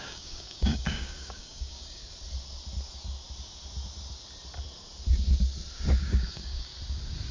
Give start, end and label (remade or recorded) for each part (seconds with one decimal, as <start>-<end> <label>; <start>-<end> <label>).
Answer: 0.0-2.0 remade; 2.0-6.0 recorded; 6.0-6.7 remade; 6.7-7.3 recorded